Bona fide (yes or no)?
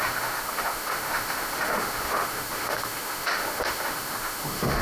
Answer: no